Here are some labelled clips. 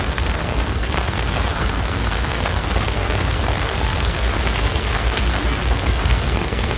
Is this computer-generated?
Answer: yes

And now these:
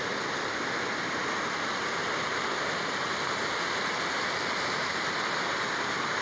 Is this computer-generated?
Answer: no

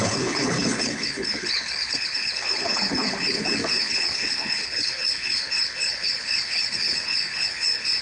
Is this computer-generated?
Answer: yes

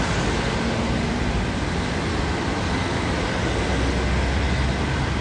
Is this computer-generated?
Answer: no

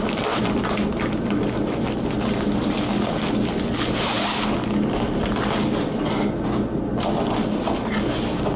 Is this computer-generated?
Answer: no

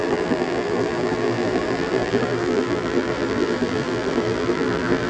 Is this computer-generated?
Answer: yes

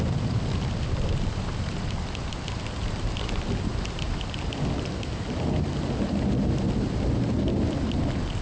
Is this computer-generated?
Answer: no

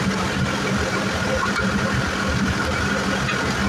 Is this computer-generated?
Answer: no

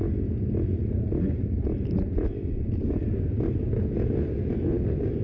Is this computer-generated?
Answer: no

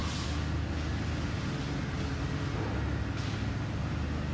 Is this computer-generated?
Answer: no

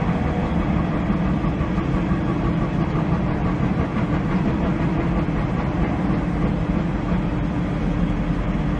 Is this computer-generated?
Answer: no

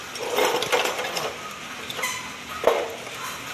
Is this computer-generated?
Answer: no